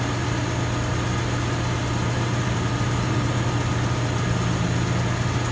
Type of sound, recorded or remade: recorded